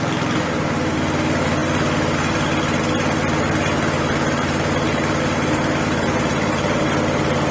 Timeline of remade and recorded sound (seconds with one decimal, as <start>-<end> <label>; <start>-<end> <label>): 0.0-7.5 recorded